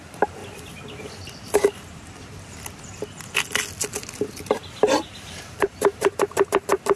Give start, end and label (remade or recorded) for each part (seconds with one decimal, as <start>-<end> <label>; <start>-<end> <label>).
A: 0.0-0.4 remade; 0.4-4.3 recorded; 4.3-7.0 remade